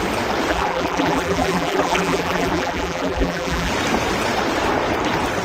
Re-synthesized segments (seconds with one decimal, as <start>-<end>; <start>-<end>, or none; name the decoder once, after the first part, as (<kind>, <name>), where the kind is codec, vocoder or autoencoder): 0.5-3.7 (vocoder, BigVGAN v2)